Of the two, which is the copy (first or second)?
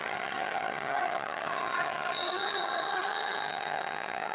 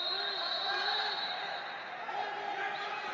first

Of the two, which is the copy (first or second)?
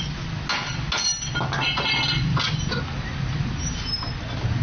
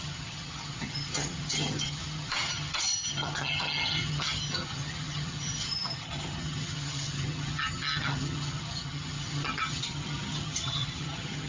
second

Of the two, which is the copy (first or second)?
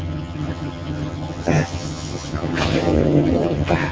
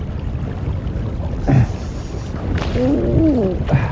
first